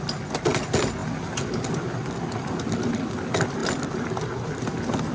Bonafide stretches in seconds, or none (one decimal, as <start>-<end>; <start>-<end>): 0.0-5.1